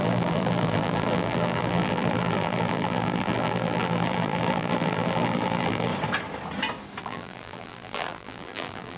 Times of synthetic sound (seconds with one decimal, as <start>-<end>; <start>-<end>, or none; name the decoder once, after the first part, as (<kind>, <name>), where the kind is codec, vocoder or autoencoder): 0.0-5.9 (vocoder, BigVGAN v2); 7.0-9.0